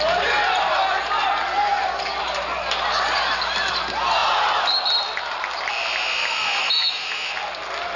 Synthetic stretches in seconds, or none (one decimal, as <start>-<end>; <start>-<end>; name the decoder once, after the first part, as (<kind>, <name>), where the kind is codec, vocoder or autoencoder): 6.2-7.3 (autoencoder, DAC-VAE)